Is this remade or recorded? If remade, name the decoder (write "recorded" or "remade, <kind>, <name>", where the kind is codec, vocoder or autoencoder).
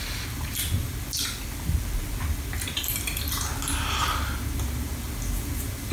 recorded